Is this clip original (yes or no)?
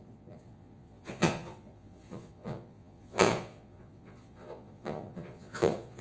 no